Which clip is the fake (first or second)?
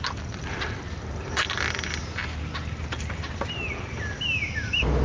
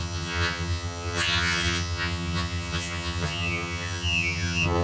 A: second